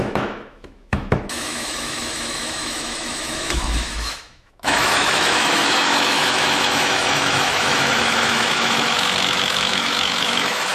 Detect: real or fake fake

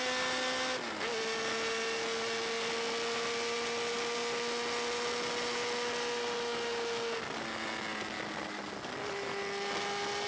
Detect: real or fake real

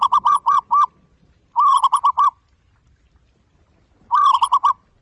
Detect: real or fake real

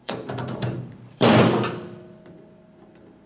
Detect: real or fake fake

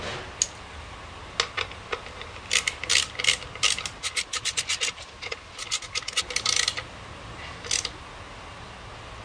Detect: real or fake real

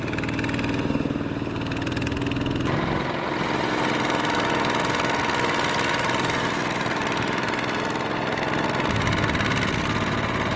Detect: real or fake real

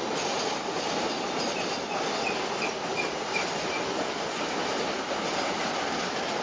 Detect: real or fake real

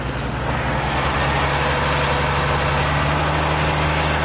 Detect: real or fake real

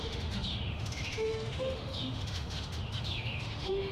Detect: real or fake fake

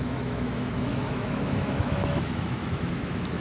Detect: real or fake fake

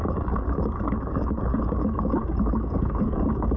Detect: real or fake fake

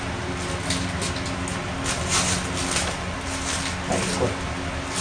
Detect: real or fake real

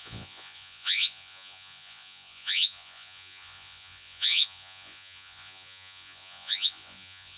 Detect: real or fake fake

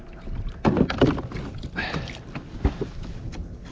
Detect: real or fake real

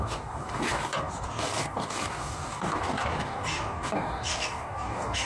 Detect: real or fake fake